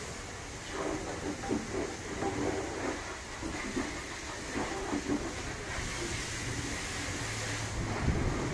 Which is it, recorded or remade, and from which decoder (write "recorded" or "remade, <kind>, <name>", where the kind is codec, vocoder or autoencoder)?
recorded